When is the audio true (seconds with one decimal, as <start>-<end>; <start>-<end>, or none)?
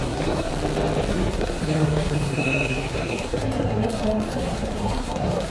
0.5-1.1